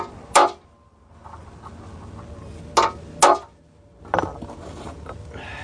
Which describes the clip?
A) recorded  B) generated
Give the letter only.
A